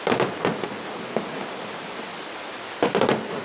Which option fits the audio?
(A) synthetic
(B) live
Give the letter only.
B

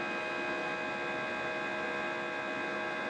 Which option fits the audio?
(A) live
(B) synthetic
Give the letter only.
A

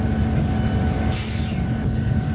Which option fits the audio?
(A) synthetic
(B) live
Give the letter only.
B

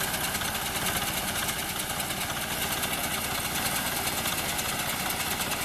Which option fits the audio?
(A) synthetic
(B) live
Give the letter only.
B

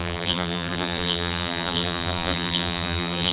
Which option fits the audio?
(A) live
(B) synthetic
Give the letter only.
B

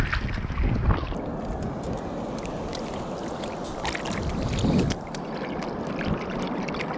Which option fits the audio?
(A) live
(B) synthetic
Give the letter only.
A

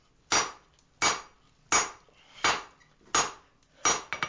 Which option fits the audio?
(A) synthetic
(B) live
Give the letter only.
B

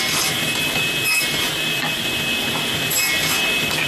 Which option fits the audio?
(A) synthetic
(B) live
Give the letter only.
B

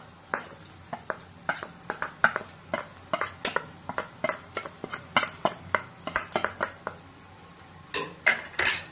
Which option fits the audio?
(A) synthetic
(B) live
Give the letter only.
B